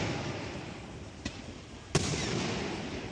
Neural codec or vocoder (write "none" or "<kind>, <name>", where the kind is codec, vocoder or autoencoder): vocoder, BigVGAN v2